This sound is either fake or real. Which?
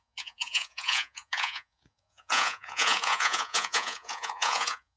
fake